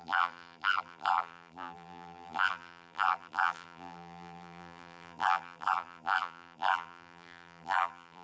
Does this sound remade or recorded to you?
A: remade